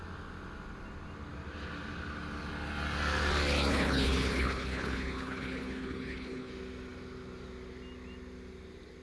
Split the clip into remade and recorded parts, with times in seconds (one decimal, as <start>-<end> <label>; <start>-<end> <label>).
0.0-3.7 recorded; 3.7-6.5 remade; 6.5-9.0 recorded